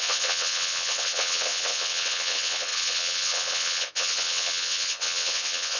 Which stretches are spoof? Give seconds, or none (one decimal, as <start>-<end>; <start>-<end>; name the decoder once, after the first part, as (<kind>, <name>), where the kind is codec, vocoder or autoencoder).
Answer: 0.0-5.8 (vocoder, WaveNeXt)